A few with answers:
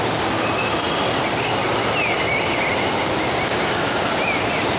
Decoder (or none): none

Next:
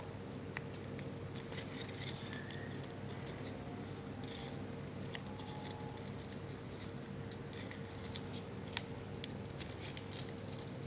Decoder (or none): none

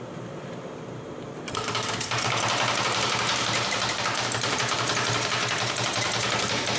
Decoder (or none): vocoder, BigVGAN v2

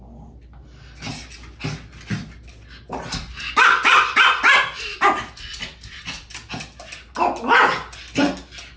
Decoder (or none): none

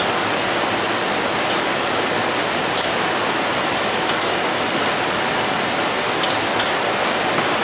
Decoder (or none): none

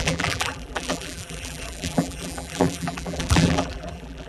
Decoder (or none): vocoder, BigVGAN v2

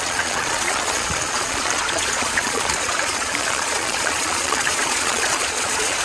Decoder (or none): vocoder, Vocos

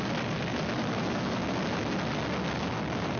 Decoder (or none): none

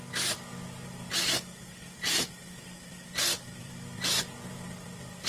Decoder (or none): none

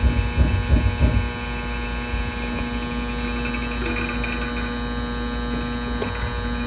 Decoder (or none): none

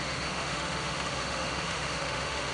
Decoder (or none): autoencoder, DAC-VAE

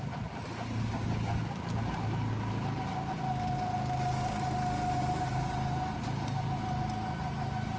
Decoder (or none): none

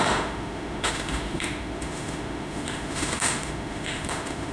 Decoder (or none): autoencoder, DAC-VAE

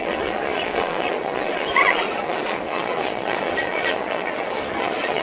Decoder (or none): vocoder, Vocos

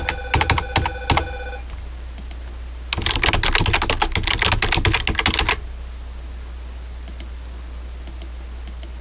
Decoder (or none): none